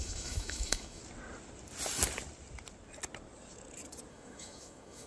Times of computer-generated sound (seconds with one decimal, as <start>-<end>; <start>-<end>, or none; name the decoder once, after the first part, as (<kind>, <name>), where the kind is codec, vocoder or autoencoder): 0.0-1.0 (autoencoder, DAC-VAE); 4.1-5.1